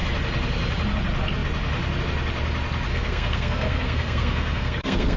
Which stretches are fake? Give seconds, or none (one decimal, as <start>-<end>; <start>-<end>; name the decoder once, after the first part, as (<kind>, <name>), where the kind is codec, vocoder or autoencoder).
2.9-5.2 (codec, SNAC)